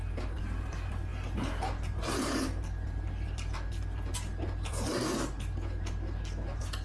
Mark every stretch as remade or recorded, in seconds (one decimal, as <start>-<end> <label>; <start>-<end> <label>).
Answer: 0.0-6.8 recorded